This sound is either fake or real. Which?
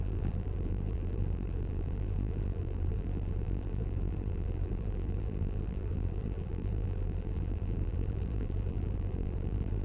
fake